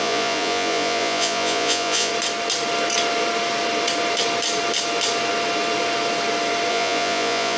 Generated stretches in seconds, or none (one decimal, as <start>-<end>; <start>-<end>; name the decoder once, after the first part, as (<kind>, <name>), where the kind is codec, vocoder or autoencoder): 0.0-2.1 (vocoder, Vocos); 6.7-7.6